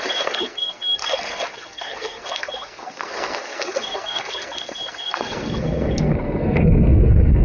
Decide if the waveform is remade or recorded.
remade